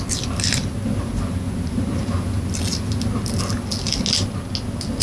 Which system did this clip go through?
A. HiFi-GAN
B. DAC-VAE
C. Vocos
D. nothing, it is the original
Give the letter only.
D